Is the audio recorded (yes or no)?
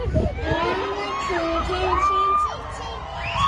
yes